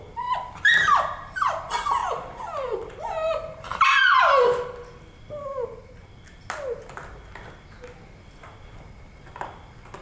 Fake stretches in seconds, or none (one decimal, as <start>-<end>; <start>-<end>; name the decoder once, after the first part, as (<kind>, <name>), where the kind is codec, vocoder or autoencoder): 0.0-3.7 (vocoder, BigVGAN v2); 8.6-10.0